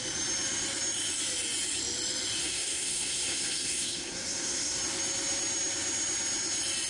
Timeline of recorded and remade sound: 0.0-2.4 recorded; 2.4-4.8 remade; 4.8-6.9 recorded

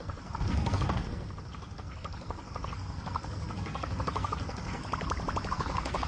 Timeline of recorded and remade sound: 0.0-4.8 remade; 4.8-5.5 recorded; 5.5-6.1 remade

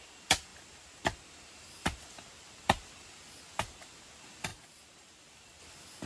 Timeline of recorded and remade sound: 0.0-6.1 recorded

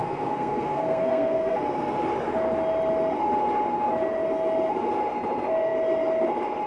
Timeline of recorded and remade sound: 0.0-1.6 remade; 1.6-6.7 recorded